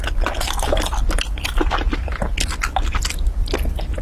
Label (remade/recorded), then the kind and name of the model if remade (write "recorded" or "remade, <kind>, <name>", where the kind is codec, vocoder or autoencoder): recorded